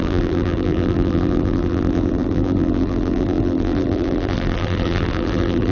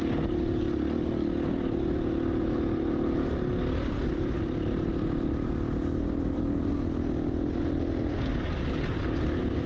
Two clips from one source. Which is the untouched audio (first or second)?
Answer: second